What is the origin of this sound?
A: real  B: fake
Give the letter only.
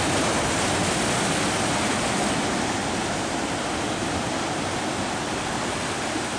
A